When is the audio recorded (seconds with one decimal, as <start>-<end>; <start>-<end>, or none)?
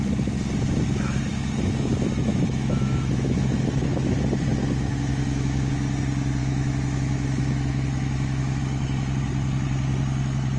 0.0-2.3; 4.1-4.9; 5.7-6.4; 8.6-10.6